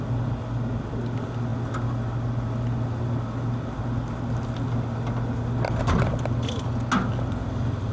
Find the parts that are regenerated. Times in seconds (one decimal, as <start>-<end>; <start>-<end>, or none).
none